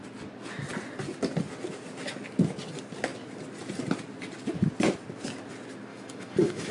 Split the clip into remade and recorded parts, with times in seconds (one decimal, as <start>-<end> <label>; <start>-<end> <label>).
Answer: 0.0-5.9 recorded; 5.9-6.7 remade